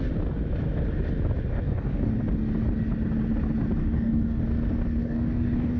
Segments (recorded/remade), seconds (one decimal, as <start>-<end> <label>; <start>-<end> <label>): 0.0-1.5 recorded; 1.5-2.1 remade; 2.1-3.8 recorded; 3.8-4.4 remade; 4.4-5.0 recorded; 5.0-5.8 remade